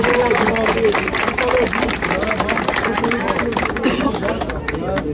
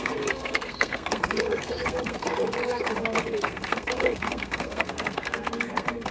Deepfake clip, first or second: second